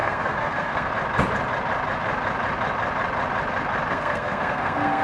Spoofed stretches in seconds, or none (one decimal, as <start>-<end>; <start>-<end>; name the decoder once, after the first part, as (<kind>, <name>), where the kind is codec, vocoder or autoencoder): 0.0-0.9 (codec, SNAC); 3.9-5.0